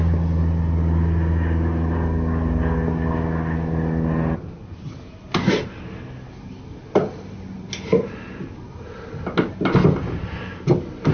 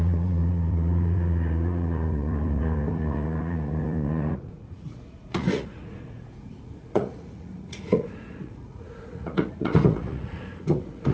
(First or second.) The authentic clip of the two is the first